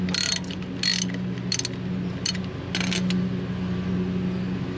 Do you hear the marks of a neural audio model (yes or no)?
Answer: no